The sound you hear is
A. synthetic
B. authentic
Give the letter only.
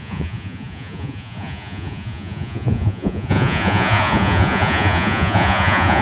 A